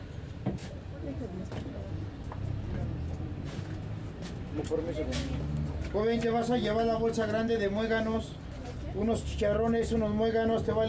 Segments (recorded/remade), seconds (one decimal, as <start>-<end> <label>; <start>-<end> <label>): 0.0-10.9 recorded